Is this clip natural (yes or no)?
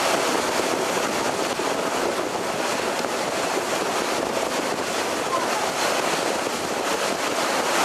yes